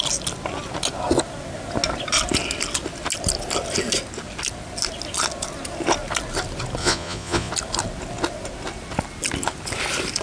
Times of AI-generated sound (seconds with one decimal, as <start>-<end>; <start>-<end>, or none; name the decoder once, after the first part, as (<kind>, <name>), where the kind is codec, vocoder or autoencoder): 6.8-7.5 (vocoder, Vocos)